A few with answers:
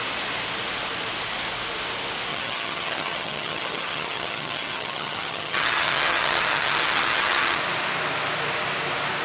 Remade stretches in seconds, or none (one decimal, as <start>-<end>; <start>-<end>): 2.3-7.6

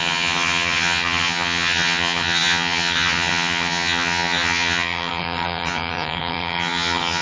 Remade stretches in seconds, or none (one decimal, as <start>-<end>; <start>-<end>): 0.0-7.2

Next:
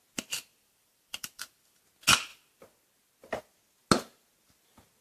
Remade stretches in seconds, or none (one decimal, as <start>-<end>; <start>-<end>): 0.5-1.8